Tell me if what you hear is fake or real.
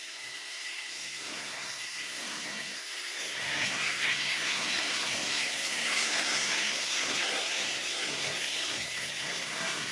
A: fake